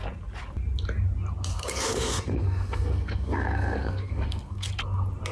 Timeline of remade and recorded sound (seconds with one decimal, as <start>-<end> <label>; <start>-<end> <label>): 0.0-1.5 recorded; 1.5-4.7 remade; 4.7-5.3 recorded